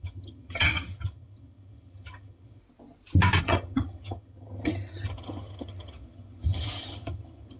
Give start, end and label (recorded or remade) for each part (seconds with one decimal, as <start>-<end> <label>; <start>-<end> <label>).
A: 0.0-2.6 remade; 2.6-3.4 recorded; 3.4-7.6 remade